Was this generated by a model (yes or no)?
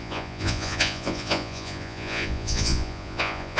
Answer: yes